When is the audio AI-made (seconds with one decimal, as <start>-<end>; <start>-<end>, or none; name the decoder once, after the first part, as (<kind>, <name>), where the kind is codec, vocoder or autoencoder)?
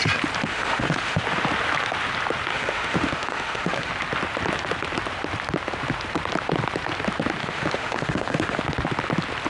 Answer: 0.5-1.2 (autoencoder, DAC-VAE); 2.5-3.9; 7.4-8.6